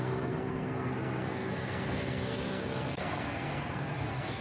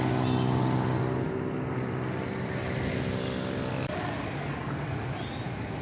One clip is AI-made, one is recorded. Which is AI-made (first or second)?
first